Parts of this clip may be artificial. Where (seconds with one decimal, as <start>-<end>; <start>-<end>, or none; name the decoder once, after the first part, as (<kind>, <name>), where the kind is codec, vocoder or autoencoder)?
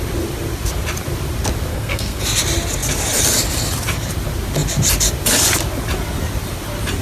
1.7-2.2 (codec, SNAC)